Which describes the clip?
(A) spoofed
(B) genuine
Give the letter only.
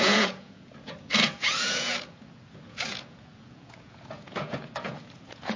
A